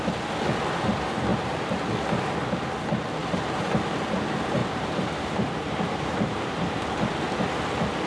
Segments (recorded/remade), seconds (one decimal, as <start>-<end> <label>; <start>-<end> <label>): 0.0-3.2 recorded; 3.2-3.9 remade; 3.9-4.6 recorded; 4.6-7.2 remade; 7.2-8.1 recorded